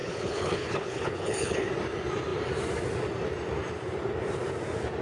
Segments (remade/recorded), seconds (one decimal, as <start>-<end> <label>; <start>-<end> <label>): 0.0-1.7 remade; 1.7-5.0 recorded